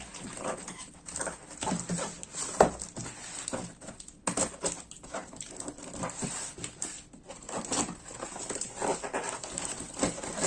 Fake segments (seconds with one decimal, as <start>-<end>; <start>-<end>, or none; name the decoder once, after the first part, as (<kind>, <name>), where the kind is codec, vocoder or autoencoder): none